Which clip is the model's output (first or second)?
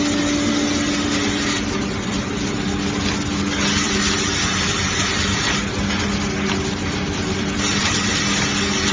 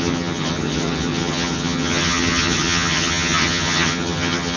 second